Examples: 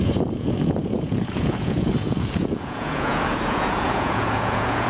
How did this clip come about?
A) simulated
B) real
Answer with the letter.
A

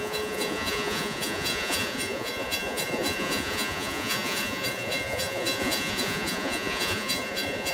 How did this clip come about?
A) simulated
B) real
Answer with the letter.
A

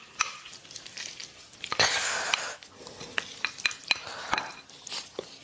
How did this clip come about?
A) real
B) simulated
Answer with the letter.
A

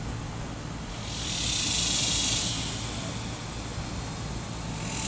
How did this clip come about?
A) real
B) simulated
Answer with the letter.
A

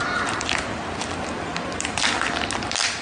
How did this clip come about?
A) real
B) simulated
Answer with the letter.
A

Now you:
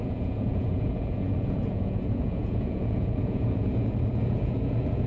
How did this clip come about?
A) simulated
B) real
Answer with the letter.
A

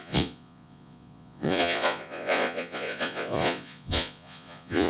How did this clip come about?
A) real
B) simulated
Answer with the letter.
B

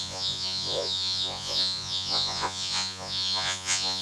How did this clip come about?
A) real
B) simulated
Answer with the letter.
B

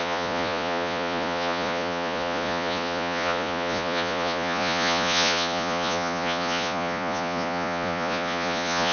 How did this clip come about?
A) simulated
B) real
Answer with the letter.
A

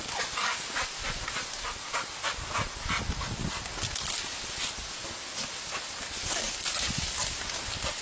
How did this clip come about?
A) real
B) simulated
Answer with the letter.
A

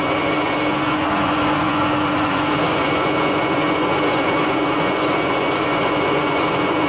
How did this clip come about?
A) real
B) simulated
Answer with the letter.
B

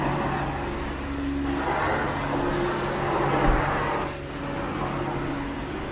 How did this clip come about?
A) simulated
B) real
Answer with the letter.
B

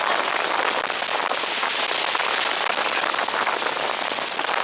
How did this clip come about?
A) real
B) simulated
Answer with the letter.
A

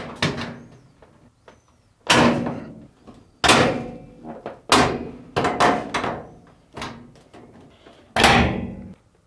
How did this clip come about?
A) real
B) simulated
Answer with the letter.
A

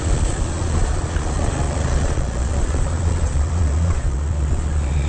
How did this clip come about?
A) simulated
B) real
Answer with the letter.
A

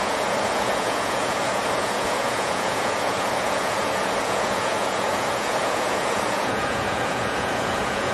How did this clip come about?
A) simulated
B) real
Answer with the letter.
A